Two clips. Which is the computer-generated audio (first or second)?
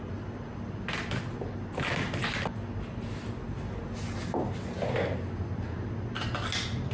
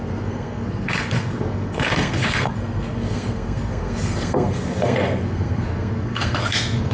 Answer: second